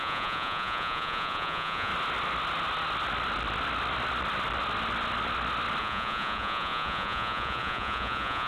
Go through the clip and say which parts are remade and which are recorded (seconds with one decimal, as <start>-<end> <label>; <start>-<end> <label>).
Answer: 0.0-1.9 remade; 1.9-5.8 recorded; 5.8-8.5 remade